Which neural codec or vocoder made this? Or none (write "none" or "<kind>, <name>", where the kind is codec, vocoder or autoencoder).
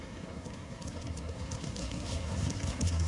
codec, SNAC